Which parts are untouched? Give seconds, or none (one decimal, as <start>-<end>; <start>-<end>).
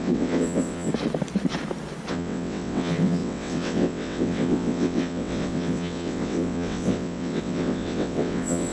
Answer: 0.9-2.1